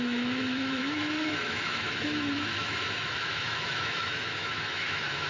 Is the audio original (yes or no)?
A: no